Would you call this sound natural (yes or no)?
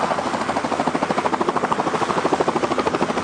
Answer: yes